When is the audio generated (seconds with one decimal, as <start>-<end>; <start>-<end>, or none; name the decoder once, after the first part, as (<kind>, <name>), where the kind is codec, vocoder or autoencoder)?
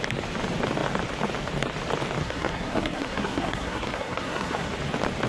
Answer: 2.2-4.7 (codec, SNAC)